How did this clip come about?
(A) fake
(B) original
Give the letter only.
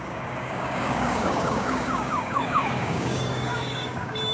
A